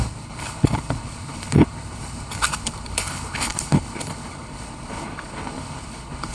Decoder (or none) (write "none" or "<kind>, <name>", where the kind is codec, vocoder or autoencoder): codec, HILCodec